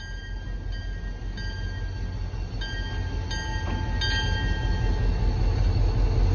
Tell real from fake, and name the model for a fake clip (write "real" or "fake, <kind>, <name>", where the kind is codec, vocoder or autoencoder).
real